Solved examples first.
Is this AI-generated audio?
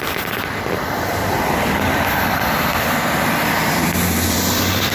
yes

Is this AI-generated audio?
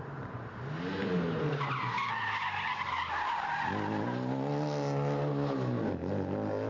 no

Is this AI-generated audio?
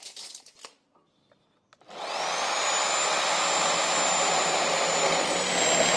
no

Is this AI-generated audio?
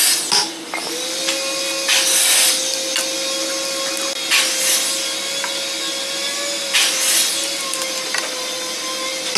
no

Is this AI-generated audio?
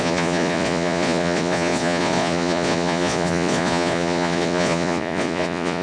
yes